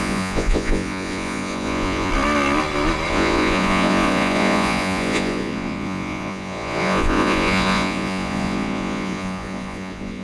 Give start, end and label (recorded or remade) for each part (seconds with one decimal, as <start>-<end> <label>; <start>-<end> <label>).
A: 0.0-2.1 remade; 2.1-3.1 recorded; 3.1-10.2 remade